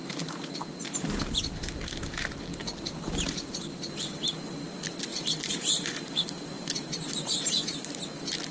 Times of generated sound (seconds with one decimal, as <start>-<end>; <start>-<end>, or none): 0.0-1.4; 2.5-4.3; 5.1-8.0